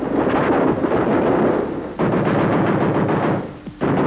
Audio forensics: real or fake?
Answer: real